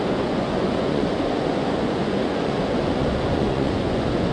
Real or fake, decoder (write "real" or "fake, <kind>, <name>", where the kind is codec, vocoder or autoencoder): fake, vocoder, Vocos